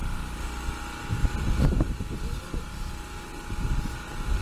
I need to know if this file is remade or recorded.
recorded